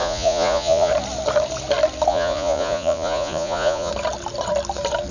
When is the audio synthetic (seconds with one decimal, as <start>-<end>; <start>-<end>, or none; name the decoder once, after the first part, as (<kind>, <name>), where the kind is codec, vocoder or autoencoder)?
0.0-0.9 (vocoder, Vocos); 2.1-3.9